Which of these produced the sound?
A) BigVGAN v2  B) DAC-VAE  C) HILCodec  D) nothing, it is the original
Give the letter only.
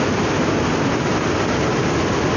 D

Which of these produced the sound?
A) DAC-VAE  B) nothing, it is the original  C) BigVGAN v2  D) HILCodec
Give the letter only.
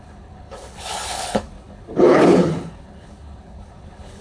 D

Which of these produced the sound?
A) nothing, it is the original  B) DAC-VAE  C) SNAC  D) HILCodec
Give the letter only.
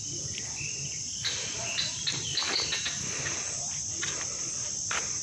A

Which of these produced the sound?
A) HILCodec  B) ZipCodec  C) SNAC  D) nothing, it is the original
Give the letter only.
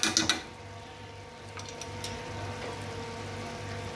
D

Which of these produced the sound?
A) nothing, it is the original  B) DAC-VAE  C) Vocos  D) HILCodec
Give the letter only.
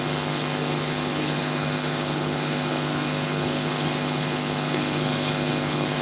D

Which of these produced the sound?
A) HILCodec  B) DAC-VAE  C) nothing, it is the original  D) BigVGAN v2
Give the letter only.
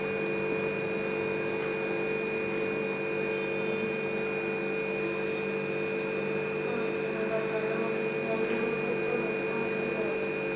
C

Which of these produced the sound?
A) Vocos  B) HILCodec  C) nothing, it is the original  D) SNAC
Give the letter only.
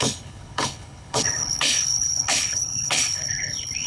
B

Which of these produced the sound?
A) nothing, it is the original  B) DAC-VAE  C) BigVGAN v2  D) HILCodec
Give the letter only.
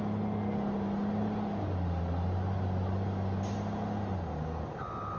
A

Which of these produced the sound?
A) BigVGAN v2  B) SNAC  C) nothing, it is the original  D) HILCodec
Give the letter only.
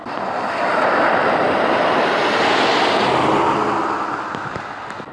C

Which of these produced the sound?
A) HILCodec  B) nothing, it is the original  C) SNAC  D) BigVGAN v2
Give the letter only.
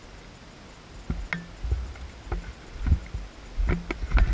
B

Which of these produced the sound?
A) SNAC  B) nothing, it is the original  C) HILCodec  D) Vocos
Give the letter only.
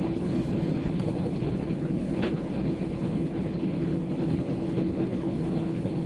C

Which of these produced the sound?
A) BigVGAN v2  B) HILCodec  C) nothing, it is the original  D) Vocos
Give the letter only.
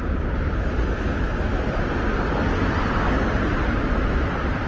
C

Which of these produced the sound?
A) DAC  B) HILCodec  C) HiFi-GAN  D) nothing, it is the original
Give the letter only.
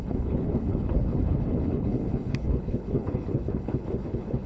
B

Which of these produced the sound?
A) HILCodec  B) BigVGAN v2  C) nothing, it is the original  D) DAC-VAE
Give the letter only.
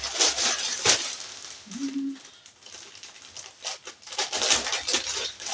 C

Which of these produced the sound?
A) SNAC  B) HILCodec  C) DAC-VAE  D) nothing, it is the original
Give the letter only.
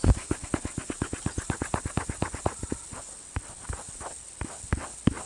D